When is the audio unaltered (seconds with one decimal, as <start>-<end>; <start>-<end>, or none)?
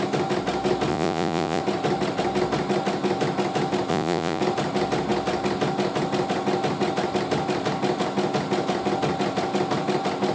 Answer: 0.0-0.9; 1.6-3.9; 4.4-10.3